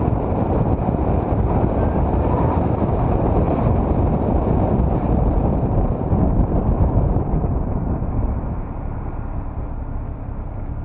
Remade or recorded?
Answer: remade